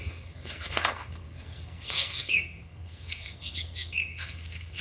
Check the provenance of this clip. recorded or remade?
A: remade